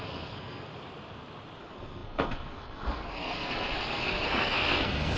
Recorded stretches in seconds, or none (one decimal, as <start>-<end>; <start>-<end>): 0.7-1.6